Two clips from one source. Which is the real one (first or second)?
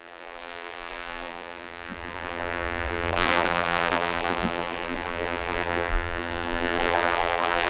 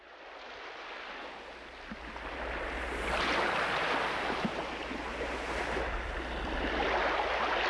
second